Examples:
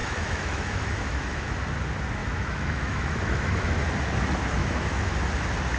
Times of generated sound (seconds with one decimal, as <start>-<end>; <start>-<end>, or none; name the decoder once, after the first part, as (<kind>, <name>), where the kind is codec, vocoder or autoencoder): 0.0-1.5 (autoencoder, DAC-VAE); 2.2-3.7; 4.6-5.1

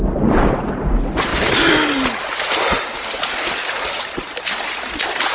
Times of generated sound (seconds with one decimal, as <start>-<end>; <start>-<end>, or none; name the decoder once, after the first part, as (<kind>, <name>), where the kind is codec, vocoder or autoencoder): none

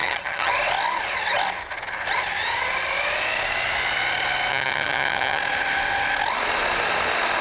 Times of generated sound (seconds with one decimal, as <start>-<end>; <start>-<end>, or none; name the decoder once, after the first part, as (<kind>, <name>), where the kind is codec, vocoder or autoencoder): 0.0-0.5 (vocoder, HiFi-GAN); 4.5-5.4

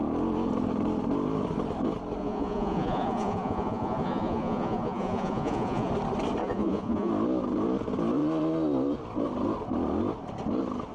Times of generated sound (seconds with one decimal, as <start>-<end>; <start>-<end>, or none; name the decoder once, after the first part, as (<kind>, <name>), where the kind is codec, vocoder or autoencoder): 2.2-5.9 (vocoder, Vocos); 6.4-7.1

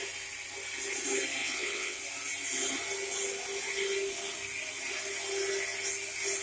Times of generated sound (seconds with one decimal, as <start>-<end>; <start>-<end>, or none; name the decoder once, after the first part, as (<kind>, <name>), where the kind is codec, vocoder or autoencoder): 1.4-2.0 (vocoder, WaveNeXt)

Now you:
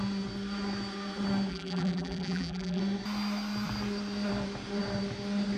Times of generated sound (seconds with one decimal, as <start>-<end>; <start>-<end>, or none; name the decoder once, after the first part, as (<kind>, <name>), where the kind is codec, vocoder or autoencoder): 1.5-2.8 (vocoder, BigVGAN v2)